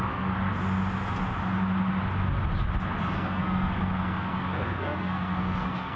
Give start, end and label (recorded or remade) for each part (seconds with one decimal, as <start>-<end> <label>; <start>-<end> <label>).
0.0-0.5 remade; 0.5-3.0 recorded; 3.0-6.0 remade